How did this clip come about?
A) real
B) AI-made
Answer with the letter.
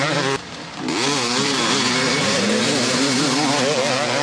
A